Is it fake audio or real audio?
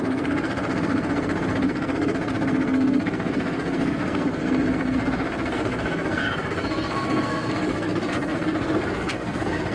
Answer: fake